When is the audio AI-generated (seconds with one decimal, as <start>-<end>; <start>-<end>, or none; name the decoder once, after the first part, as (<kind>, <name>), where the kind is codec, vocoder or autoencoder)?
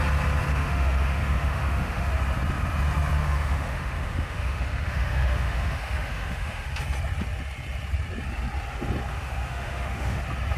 0.5-2.1 (autoencoder, DAC-VAE); 3.2-6.8; 9.1-10.2